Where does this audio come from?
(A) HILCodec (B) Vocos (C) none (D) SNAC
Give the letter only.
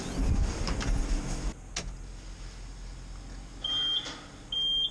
C